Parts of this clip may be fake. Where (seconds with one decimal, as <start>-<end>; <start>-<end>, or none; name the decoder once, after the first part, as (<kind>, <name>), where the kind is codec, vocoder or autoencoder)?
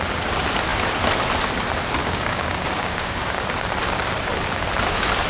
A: 2.0-3.4 (codec, DAC)